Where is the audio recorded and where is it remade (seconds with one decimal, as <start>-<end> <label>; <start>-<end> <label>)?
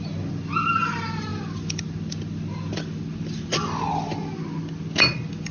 0.0-5.5 recorded